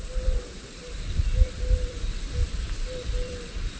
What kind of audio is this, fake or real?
fake